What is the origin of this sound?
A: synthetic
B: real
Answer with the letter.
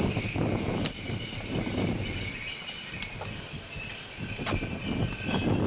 B